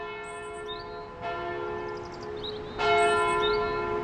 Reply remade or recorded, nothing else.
recorded